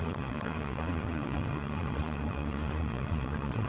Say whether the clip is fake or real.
fake